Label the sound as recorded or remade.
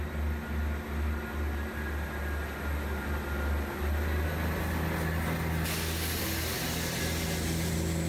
recorded